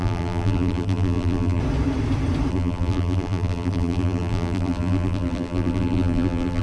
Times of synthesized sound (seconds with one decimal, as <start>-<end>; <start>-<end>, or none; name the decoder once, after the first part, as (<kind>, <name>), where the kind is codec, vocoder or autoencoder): 0.0-1.6 (vocoder, BigVGAN v2); 2.5-6.6